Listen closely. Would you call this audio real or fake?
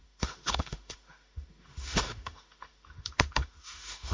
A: fake